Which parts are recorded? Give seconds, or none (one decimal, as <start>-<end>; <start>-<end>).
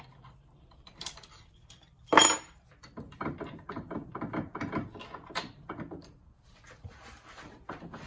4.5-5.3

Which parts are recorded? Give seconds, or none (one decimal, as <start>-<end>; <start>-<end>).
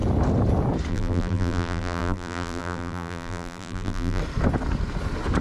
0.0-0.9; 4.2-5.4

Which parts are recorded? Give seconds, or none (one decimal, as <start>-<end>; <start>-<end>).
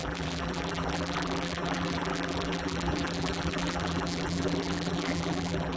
none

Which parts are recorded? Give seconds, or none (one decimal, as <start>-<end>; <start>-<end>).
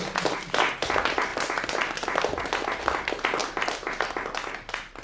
0.0-3.4; 4.1-5.0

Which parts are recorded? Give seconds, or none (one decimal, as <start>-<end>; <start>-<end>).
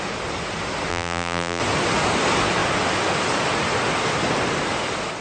0.0-0.9; 1.6-5.2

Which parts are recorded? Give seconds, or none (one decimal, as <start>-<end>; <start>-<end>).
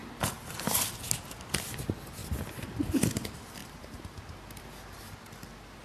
0.5-3.6; 4.2-5.8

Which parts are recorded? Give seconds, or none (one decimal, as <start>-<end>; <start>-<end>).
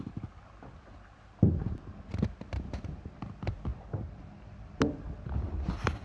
0.0-6.0